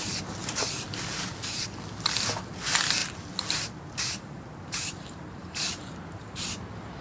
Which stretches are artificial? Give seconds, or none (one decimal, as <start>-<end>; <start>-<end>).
3.0-7.0